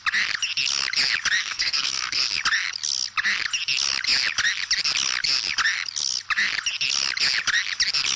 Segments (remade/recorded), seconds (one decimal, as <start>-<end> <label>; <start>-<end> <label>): 0.0-1.4 recorded; 1.4-2.2 remade; 2.2-8.2 recorded